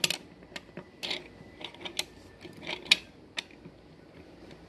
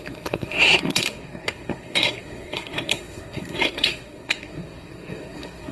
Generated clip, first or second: second